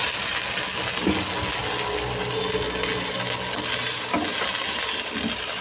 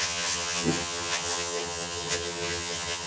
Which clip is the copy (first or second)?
second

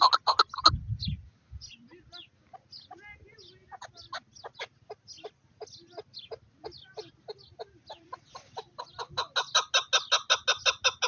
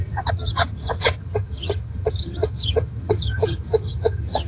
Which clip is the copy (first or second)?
second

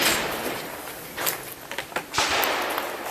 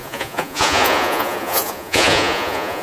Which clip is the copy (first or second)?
second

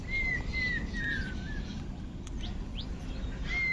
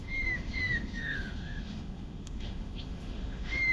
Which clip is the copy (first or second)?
second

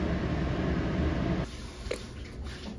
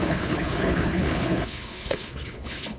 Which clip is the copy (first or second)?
second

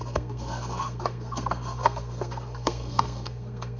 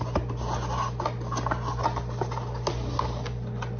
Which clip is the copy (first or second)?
first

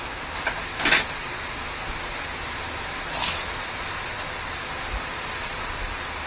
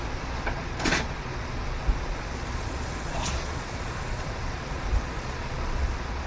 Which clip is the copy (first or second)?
second